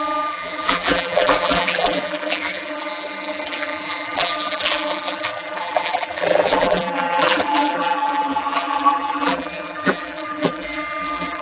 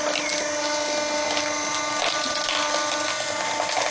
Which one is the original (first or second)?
second